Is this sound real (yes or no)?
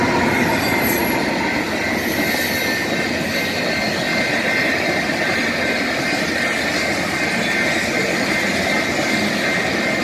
yes